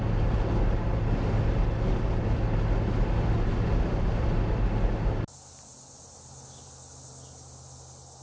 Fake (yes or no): no